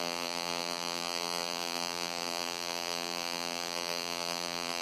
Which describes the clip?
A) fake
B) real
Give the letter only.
A